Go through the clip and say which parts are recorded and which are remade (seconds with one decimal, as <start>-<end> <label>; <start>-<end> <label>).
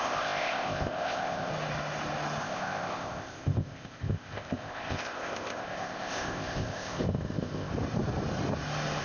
0.0-1.5 remade; 1.5-2.4 recorded; 2.4-7.7 remade; 7.7-9.0 recorded